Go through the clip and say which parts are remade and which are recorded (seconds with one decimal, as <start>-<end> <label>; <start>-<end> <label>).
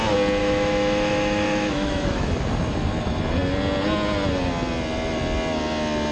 0.0-0.4 recorded; 0.4-2.3 remade; 2.3-6.1 recorded